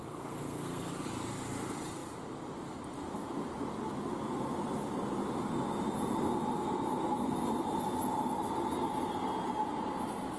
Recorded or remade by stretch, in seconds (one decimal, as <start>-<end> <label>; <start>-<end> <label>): 0.0-0.9 remade; 0.9-10.4 recorded